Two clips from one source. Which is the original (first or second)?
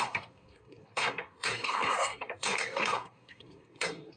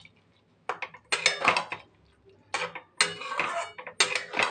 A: second